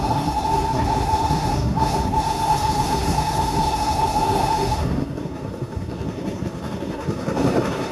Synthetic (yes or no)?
yes